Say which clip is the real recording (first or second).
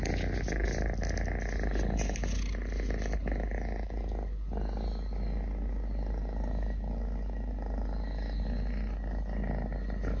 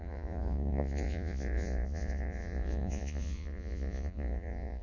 first